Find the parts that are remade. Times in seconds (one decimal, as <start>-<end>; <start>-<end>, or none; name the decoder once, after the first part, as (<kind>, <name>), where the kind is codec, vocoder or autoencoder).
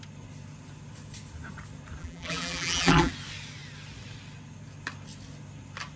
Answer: 2.0-3.1 (vocoder, BigVGAN v2)